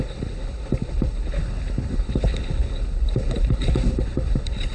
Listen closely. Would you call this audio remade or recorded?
remade